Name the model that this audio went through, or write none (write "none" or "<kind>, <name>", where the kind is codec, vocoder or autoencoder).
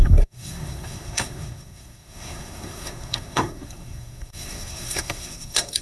codec, SNAC